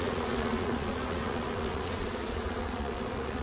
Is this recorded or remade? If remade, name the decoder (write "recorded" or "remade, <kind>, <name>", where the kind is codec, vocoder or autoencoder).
remade, vocoder, Vocos